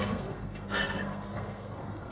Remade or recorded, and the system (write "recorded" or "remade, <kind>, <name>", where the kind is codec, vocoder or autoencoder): remade, codec, SNAC